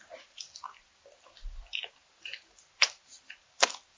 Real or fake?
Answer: real